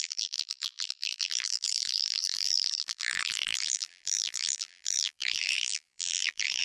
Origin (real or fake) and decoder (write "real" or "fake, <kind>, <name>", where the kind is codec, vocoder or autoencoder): fake, vocoder, BigVGAN v2